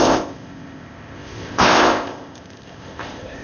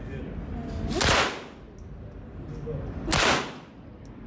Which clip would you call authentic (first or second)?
second